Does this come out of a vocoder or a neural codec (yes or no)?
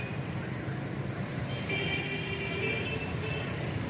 no